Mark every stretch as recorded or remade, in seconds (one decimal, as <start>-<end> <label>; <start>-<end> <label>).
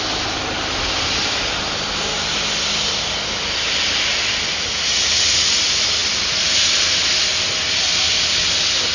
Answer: 0.0-8.9 recorded